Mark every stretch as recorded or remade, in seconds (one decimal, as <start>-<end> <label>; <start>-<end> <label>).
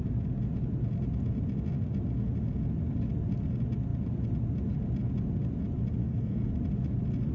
0.0-6.0 recorded; 6.0-6.5 remade; 6.5-7.3 recorded